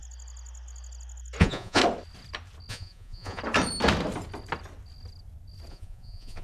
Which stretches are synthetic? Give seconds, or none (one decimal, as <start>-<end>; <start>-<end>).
1.4-1.8; 2.7-3.4; 5.7-6.4